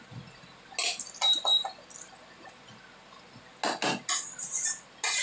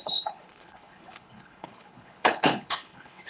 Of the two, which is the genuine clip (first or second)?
first